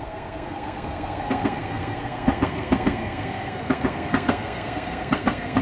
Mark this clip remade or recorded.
remade